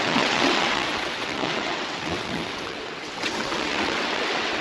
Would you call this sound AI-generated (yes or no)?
yes